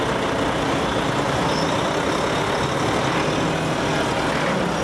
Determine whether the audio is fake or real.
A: real